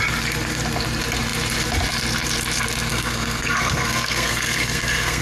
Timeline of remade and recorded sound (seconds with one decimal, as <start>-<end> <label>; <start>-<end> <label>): 0.0-2.9 recorded; 2.9-5.2 remade